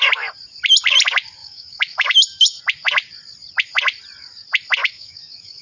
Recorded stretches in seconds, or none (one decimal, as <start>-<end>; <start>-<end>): 0.0-1.4; 2.6-4.8

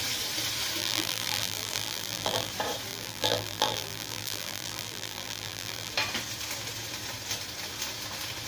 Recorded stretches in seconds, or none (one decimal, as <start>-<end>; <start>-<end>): 0.0-0.8; 2.5-2.9; 5.9-8.5